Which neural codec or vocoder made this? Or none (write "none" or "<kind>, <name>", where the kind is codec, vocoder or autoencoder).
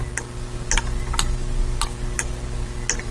none